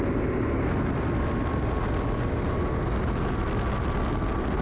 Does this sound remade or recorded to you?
recorded